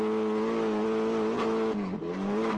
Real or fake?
real